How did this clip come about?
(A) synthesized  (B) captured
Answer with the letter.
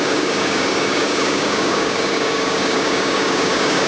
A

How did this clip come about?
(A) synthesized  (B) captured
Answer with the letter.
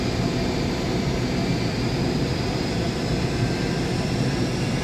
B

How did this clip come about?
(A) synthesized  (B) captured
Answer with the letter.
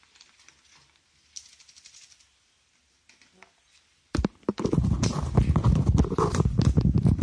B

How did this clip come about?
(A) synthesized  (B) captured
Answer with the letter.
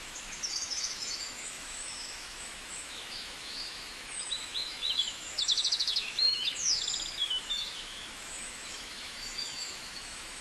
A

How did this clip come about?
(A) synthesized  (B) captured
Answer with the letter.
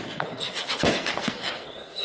A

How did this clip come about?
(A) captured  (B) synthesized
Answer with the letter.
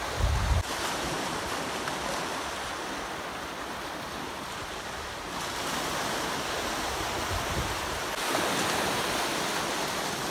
A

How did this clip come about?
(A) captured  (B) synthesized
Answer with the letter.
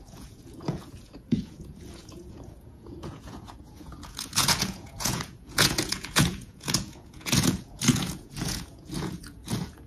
B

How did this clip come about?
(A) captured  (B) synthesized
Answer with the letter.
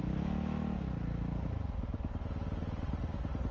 A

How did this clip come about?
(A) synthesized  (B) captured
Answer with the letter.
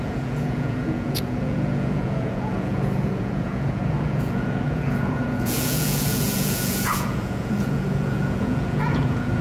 A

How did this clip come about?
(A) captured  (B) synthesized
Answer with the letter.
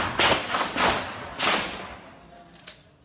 A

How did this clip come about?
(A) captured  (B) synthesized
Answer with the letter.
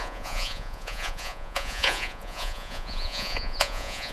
B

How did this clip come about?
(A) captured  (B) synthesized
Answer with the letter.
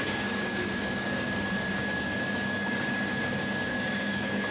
B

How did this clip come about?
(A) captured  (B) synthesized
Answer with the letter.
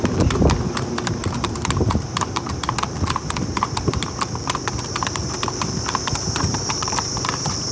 B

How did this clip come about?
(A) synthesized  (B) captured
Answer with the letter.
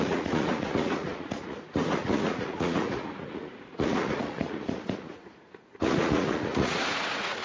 A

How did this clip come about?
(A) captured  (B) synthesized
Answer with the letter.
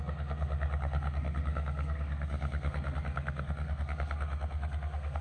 B